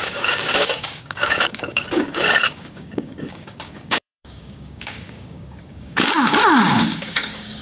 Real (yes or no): no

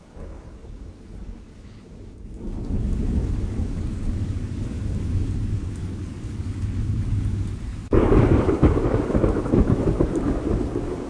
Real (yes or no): no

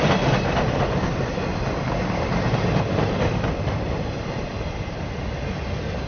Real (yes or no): yes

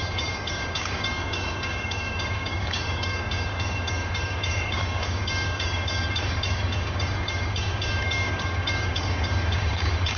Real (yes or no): no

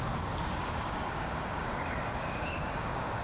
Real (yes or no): no